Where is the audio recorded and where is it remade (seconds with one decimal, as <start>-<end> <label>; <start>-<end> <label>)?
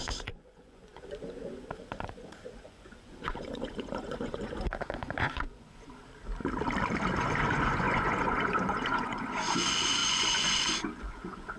0.0-6.0 remade; 6.0-7.2 recorded; 7.2-11.6 remade